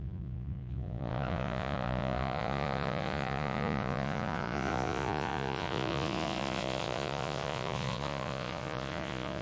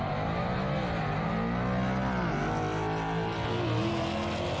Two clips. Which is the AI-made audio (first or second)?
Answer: first